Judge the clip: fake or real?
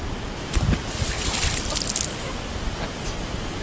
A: real